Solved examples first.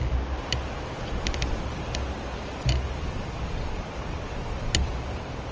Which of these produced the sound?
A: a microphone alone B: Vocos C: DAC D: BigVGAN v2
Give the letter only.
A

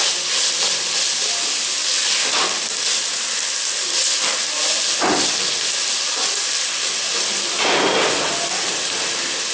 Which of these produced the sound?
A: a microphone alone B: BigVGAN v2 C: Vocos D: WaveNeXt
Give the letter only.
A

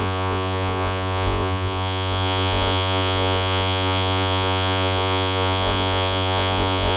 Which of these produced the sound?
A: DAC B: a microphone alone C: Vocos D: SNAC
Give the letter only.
C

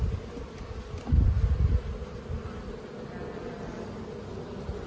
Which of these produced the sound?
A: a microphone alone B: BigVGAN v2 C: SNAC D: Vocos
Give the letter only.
A